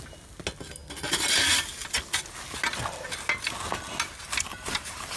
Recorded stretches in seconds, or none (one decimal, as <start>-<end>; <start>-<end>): 0.0-4.5